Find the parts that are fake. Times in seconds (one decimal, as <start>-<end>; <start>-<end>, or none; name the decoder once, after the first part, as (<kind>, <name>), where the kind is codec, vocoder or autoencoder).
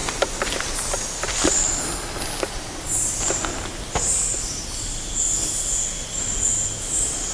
none